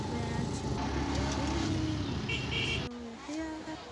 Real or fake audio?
real